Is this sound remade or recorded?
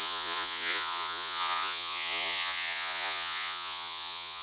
remade